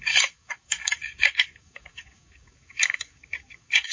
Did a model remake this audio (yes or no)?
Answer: yes